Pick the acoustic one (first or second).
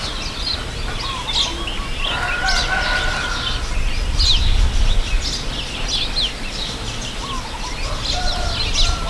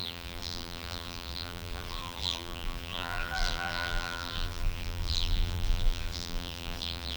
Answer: first